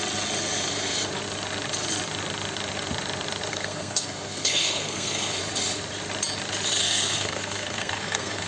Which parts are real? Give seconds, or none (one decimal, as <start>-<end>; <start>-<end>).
0.0-3.5; 5.4-6.8